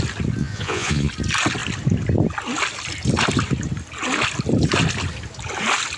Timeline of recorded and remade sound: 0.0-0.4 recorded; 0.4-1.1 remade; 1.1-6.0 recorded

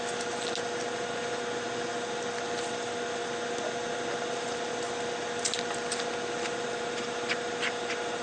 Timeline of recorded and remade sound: 0.0-8.2 recorded

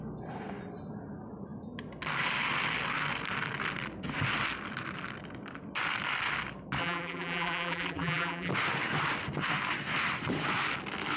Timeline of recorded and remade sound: 0.0-6.8 recorded; 6.8-8.5 remade; 8.5-11.2 recorded